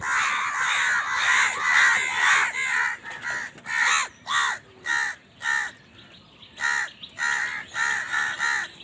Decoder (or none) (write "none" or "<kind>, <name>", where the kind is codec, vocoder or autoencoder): none